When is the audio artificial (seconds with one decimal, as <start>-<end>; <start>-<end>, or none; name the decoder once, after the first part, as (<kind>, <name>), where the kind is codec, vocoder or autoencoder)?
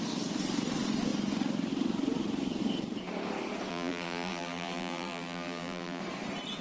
3.7-6.0 (vocoder, BigVGAN v2)